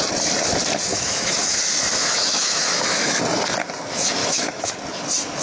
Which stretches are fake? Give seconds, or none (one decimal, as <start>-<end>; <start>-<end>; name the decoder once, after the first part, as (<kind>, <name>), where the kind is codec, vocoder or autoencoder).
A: 0.9-1.6 (autoencoder, DAC-VAE); 2.0-3.2; 4.2-4.7